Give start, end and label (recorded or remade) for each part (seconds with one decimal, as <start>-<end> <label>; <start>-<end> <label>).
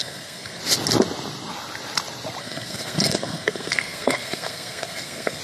0.0-0.6 remade; 0.6-2.4 recorded; 2.4-5.4 remade